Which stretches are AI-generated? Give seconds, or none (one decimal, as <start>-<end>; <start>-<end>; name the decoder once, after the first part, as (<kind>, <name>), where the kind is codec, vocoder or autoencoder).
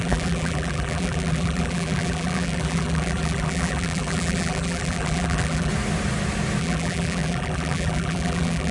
0.0-5.7 (vocoder, BigVGAN v2); 6.6-8.7